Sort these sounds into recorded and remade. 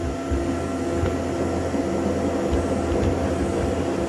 recorded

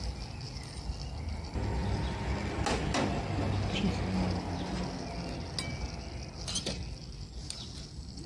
recorded